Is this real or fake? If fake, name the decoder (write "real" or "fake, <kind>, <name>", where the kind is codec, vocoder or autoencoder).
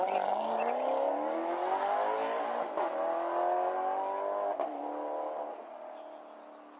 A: real